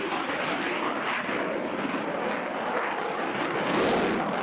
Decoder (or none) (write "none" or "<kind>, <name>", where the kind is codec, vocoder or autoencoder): none